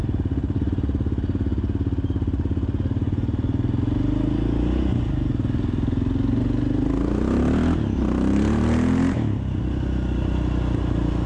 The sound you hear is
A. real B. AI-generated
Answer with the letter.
A